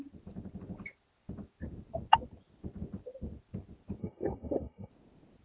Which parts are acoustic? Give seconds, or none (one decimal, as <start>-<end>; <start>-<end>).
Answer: 0.0-4.0; 4.9-5.4